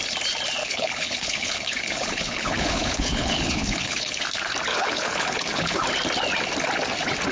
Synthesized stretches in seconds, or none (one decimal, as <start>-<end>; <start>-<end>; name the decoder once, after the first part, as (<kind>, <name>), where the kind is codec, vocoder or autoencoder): 0.6-4.2 (codec, HILCodec); 4.7-5.8